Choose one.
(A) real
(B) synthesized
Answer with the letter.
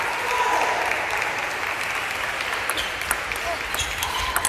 A